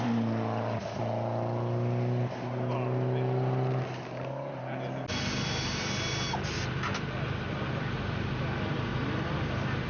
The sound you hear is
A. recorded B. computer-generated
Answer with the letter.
A